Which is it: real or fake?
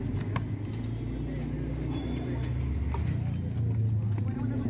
real